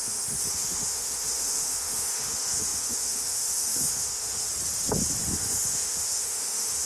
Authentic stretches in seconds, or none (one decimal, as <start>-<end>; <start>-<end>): 4.5-5.2